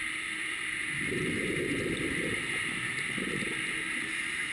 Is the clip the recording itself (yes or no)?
yes